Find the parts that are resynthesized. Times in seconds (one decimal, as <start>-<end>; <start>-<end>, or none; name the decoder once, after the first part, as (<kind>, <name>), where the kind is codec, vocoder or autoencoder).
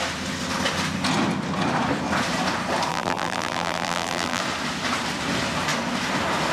2.9-4.4 (vocoder, BigVGAN v2)